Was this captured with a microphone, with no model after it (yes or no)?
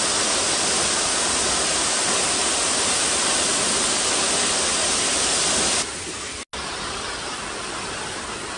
yes